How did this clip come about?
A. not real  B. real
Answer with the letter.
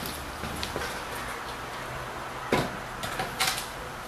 B